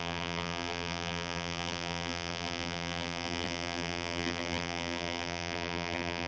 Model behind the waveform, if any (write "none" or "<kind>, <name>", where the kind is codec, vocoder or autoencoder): vocoder, BigVGAN v2